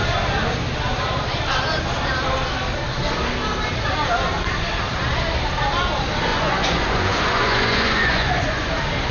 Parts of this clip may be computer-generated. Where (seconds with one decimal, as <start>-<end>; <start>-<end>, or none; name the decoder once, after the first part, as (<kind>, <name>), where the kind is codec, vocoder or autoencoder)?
6.3-8.7 (vocoder, Vocos)